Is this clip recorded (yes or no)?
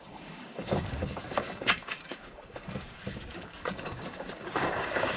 no